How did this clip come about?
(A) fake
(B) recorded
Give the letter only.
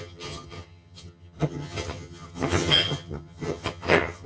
A